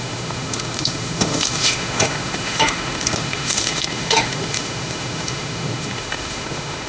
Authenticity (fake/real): fake